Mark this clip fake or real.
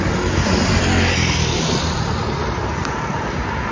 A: real